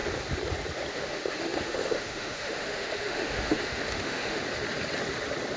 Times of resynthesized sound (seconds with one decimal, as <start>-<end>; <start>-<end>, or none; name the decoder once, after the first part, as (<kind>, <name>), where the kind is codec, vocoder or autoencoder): 0.9-4.4 (autoencoder, DAC-VAE)